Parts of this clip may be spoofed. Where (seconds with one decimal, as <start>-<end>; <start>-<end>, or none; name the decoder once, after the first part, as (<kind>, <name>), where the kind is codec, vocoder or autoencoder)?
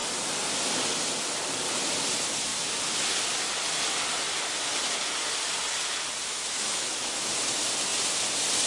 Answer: 6.3-7.3 (autoencoder, DAC-VAE)